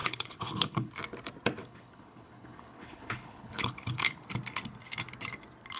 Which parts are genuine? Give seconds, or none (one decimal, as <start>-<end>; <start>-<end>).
0.9-1.6; 4.2-5.8